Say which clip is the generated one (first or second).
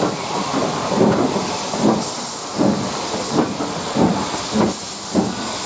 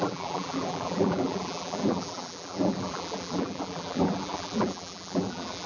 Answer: second